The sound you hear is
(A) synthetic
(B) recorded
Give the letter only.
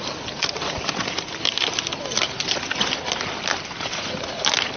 B